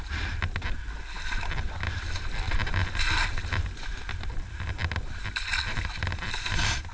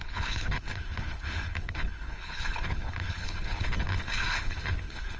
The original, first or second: first